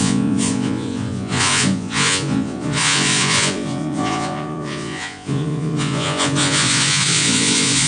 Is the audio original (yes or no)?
no